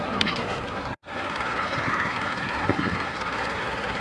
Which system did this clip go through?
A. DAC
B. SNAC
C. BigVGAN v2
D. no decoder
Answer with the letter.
B